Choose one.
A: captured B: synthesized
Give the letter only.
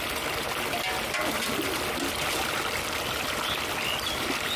A